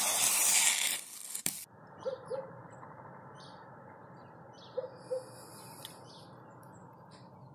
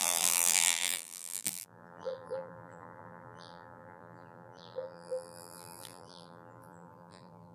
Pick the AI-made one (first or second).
second